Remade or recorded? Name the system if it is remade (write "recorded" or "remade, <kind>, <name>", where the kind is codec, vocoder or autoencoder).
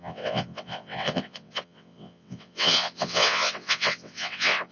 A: remade, vocoder, WaveNeXt